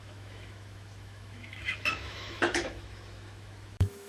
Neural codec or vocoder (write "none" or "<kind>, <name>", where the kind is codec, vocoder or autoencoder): autoencoder, DAC-VAE